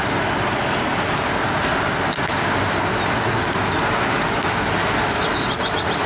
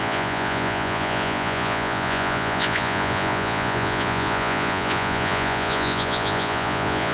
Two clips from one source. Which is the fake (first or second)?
second